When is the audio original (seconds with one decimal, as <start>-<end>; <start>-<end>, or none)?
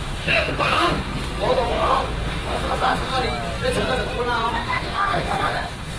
1.1-1.7; 3.1-4.5